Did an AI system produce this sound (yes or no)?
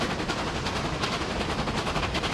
no